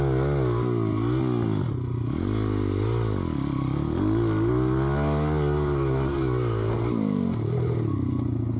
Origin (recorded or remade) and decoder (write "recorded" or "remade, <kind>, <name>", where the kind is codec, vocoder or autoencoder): recorded